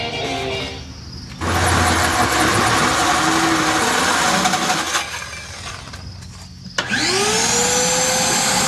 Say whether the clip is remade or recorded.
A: recorded